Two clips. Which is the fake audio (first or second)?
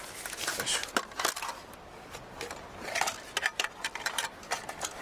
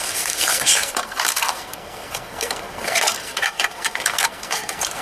second